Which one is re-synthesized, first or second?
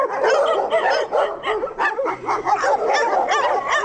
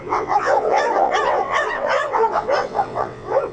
second